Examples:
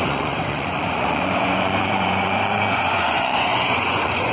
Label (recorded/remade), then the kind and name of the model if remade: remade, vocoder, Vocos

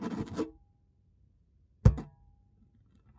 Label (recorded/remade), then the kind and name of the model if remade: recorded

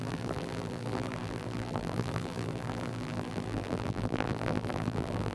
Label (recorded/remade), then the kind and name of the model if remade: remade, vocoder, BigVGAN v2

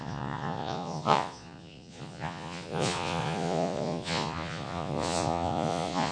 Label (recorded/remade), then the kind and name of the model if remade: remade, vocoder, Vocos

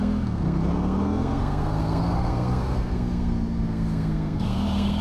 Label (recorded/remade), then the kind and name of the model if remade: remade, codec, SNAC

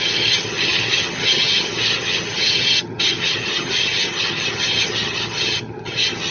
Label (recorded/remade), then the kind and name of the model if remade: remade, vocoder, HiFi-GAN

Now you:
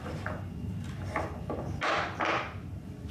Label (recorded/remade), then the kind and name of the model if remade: recorded